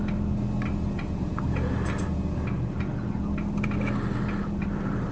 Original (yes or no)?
yes